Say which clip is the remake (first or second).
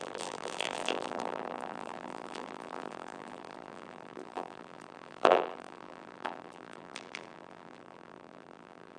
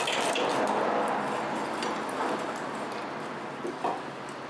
first